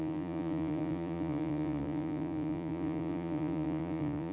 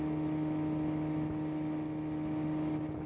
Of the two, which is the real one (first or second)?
second